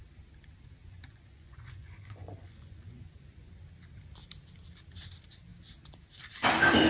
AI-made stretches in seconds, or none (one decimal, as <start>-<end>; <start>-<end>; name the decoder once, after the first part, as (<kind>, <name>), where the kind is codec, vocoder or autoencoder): 0.8-3.5 (vocoder, Vocos)